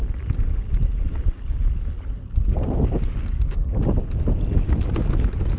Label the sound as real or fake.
real